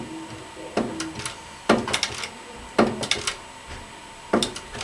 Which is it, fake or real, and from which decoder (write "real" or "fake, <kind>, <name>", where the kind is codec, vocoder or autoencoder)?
real